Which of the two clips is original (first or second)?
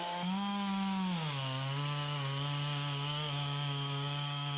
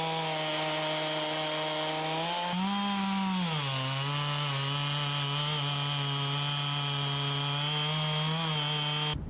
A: second